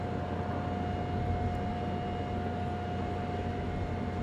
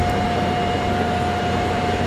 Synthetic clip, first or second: second